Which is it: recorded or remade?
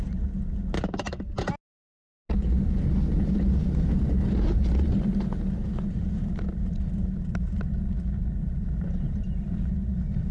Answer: recorded